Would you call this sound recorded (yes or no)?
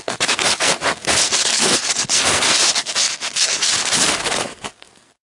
no